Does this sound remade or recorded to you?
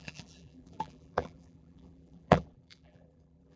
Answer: remade